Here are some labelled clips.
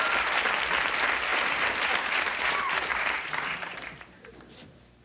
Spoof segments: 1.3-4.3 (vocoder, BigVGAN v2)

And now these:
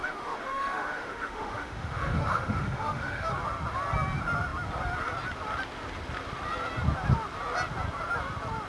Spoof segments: 0.0-3.3 (autoencoder, DAC-VAE)

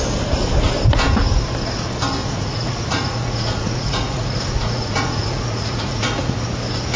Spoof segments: 2.2-6.4 (vocoder, Vocos)

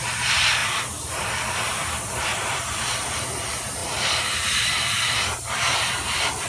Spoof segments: 0.6-3.0 (vocoder, BigVGAN v2); 3.8-6.5

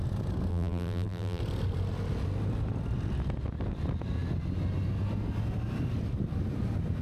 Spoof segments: 0.5-1.4 (vocoder, BigVGAN v2)

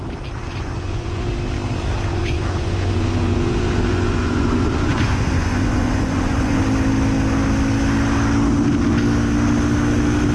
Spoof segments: 0.4-1.3 (vocoder, Vocos); 2.1-6.6

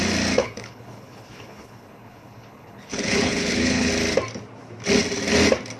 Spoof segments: 0.4-3.9 (codec, HILCodec)